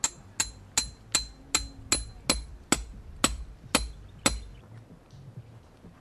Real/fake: real